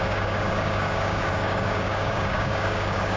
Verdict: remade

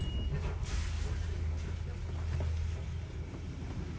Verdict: recorded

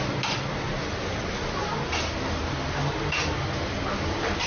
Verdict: recorded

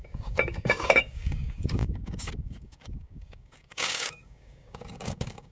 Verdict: remade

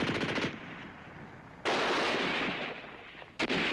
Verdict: recorded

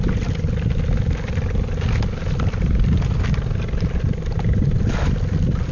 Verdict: recorded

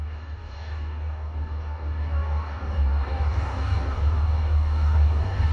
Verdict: remade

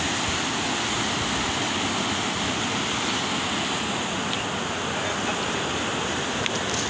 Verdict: recorded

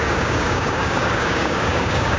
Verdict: remade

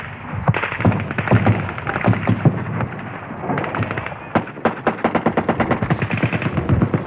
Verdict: recorded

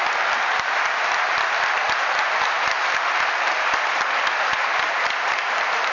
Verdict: recorded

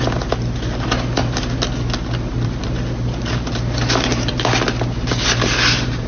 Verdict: recorded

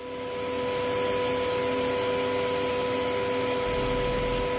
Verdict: recorded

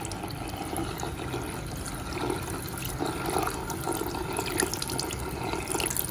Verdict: recorded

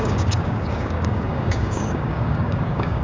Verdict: remade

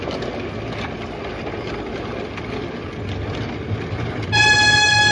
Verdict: recorded